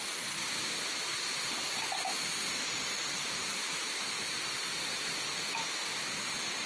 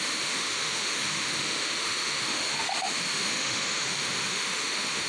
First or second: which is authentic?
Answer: first